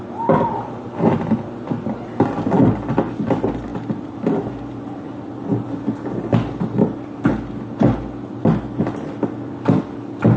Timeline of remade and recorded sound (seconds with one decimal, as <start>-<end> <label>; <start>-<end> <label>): 0.0-10.4 recorded